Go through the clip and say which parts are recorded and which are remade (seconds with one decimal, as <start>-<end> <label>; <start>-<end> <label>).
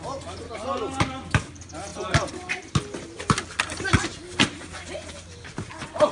0.0-6.1 recorded